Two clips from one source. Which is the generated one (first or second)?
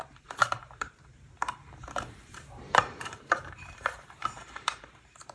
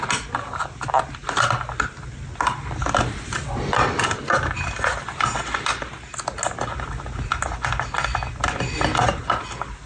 first